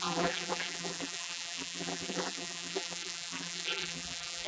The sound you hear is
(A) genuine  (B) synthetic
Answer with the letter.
B